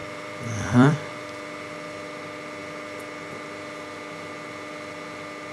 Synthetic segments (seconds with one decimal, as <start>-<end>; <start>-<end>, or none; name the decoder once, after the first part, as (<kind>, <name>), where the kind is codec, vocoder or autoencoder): 0.0-1.1 (vocoder, BigVGAN v2)